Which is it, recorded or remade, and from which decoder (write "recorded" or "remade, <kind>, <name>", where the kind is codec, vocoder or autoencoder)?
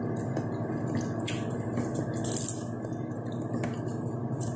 recorded